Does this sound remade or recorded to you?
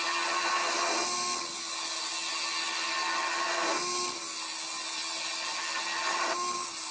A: recorded